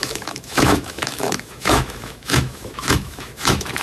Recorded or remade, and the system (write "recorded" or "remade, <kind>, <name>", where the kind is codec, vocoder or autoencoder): remade, autoencoder, DAC-VAE